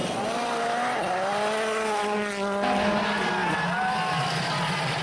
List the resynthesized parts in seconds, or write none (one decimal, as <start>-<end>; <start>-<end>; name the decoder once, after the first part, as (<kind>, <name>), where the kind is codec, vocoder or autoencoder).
none